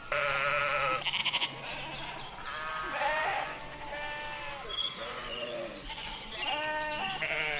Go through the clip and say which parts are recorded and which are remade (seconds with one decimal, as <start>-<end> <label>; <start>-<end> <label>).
0.0-1.2 recorded; 1.2-1.7 remade; 1.7-2.7 recorded; 2.7-3.6 remade; 3.6-4.7 recorded; 4.7-6.3 remade; 6.3-7.6 recorded